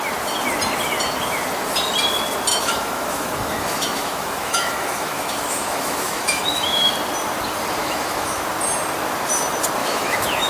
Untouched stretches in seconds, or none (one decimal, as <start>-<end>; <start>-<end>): 0.0-2.5; 6.9-7.8; 8.4-9.8